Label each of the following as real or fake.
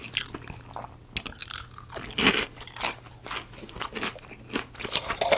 real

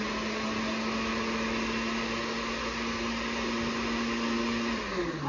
real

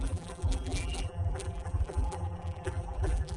fake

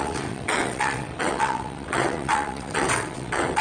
fake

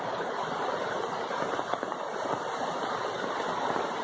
real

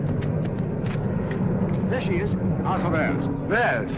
real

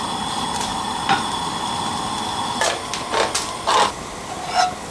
real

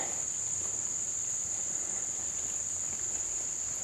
real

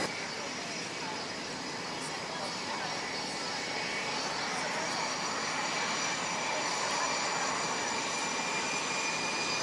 real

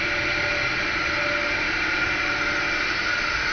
real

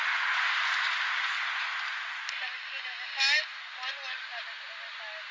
real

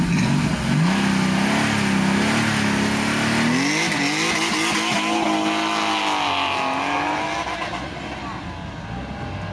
real